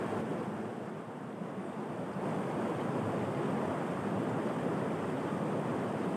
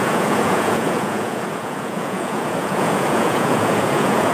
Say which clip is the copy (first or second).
second